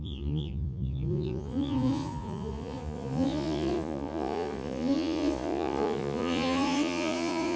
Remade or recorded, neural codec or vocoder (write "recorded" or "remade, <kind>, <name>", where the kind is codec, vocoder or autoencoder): remade, vocoder, Vocos